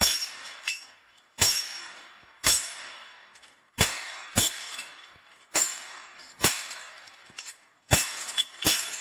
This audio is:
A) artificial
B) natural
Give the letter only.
A